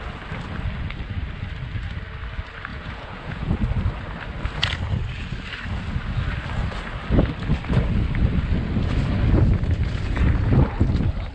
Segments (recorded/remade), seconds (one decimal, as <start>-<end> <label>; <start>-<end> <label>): 0.0-2.7 recorded; 2.7-3.6 remade; 3.6-11.3 recorded